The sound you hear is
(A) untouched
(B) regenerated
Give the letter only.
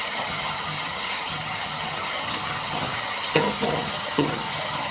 B